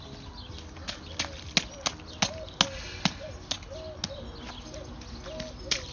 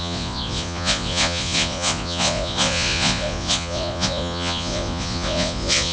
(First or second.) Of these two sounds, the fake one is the second